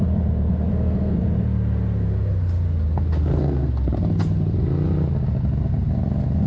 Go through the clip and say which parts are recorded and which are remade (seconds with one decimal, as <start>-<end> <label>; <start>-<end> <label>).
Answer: 0.0-0.7 recorded; 0.7-1.2 remade; 1.2-3.2 recorded; 3.2-3.7 remade; 3.7-6.5 recorded